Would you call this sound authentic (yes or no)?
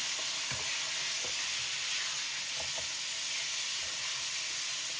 yes